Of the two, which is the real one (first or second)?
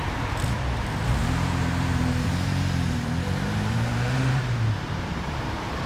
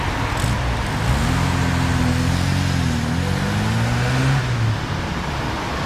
second